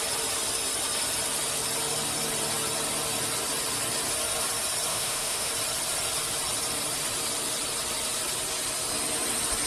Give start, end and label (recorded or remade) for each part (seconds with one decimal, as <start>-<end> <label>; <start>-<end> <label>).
0.0-4.9 recorded; 4.9-5.5 remade; 5.5-9.7 recorded